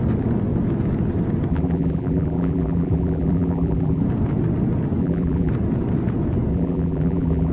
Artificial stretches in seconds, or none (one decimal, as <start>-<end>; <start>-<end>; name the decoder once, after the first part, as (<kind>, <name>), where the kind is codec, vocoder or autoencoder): 1.5-4.0 (vocoder, BigVGAN v2); 5.0-5.5; 6.5-7.5